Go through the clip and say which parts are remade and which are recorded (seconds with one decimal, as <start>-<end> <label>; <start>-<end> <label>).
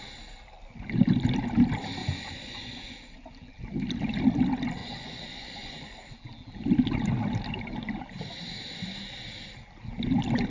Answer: 0.0-2.0 recorded; 2.0-2.8 remade; 2.8-4.8 recorded; 4.8-6.1 remade; 6.1-10.5 recorded